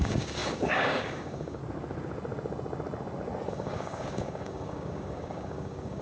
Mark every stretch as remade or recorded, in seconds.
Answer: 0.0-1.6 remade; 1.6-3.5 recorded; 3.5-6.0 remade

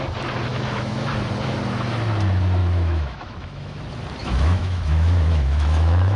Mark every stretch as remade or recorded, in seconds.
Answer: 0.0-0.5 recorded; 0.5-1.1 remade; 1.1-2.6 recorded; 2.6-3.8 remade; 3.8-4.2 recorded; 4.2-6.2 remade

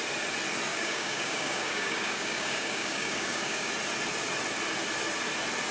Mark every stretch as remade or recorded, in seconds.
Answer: 0.0-0.7 recorded; 0.7-3.7 remade; 3.7-5.7 recorded

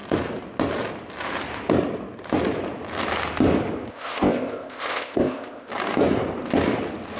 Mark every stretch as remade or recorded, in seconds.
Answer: 0.0-3.9 recorded; 3.9-5.7 remade; 5.7-7.2 recorded

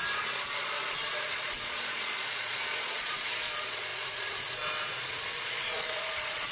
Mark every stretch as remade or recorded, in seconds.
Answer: 0.0-6.5 remade

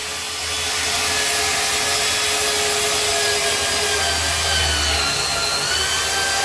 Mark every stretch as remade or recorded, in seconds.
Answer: 0.0-6.4 recorded

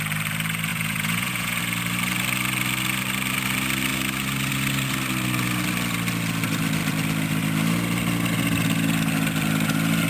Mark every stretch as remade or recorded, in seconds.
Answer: 0.0-0.7 recorded; 0.7-1.6 remade; 1.6-10.1 recorded